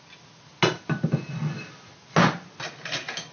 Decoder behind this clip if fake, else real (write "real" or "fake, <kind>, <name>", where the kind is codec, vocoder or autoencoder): real